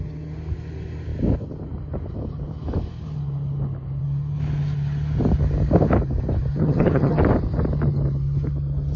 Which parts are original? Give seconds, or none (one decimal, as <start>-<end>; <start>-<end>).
0.0-6.6; 7.2-9.0